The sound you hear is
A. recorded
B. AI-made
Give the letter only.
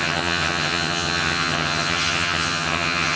B